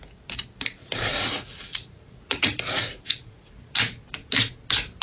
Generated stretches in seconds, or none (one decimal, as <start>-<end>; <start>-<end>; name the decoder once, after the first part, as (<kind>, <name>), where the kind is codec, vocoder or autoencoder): 0.8-3.5 (vocoder, Vocos)